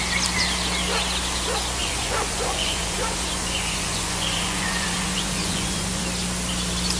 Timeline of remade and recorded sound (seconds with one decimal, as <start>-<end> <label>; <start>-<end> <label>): 0.0-1.8 recorded; 1.8-6.0 remade; 6.0-7.0 recorded